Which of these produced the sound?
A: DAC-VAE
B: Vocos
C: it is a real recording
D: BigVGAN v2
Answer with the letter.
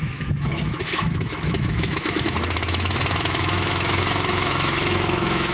A